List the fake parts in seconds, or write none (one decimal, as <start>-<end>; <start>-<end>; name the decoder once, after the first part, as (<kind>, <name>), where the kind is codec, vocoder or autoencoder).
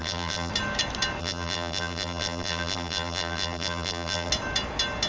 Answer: 0.0-0.5 (vocoder, BigVGAN v2); 1.2-4.3